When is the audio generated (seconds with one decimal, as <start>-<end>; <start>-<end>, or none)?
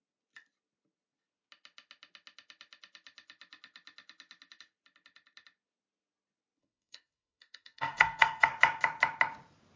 6.6-8.5